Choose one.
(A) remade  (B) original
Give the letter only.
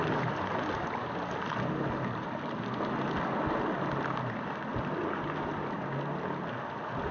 B